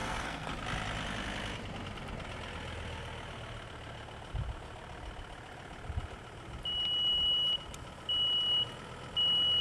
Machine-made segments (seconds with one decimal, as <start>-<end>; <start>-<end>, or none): 0.0-0.5